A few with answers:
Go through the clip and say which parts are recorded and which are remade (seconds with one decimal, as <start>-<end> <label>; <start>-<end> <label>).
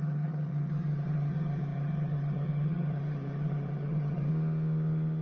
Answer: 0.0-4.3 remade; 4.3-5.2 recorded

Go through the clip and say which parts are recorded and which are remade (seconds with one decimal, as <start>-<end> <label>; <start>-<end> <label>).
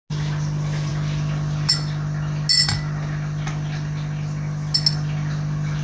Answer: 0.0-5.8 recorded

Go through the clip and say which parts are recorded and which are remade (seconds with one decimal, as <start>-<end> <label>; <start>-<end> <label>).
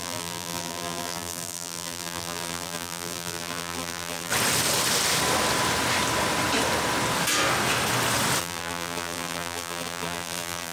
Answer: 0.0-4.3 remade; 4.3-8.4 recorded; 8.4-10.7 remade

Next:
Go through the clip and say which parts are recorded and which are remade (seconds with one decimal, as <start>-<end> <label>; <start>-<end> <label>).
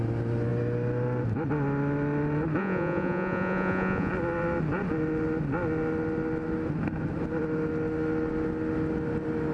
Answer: 0.0-2.6 recorded; 2.6-4.1 remade; 4.1-9.5 recorded